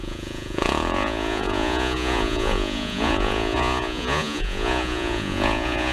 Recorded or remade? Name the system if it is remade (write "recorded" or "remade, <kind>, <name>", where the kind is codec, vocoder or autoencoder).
remade, vocoder, Vocos